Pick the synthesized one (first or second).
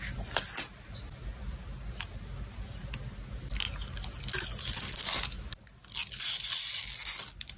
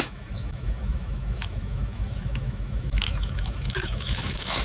second